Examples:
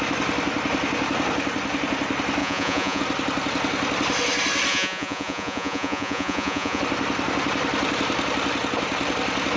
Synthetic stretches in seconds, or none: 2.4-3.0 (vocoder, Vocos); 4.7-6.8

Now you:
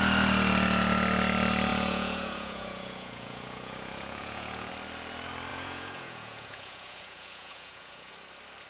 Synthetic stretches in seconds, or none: 1.7-4.7 (vocoder, Vocos); 5.5-8.1

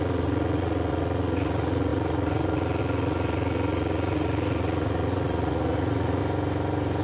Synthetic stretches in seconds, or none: 0.0-6.2 (vocoder, Vocos)

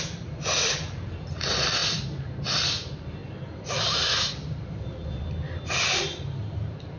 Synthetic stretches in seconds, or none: none